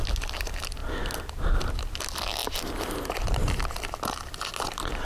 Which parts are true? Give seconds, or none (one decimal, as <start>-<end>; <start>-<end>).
0.0-5.0